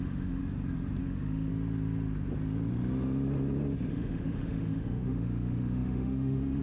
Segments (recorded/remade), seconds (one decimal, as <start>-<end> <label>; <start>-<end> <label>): 0.0-0.4 remade; 0.4-1.0 recorded; 1.0-1.5 remade; 1.5-3.9 recorded; 3.9-6.6 remade